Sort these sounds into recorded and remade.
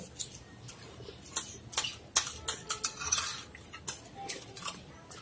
recorded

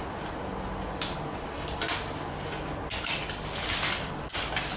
recorded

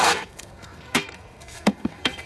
remade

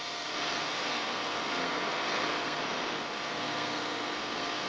remade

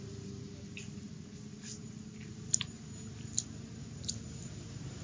recorded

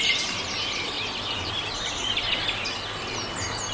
recorded